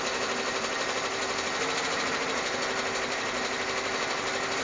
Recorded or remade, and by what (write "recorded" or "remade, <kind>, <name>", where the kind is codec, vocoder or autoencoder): recorded